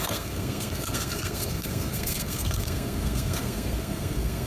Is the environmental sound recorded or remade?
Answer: remade